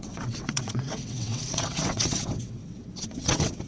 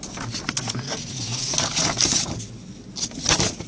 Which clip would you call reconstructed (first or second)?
first